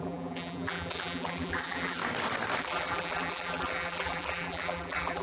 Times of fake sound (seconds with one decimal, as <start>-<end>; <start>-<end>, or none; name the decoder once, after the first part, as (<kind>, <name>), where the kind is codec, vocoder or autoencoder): 0.0-2.0 (vocoder, BigVGAN v2); 2.6-5.2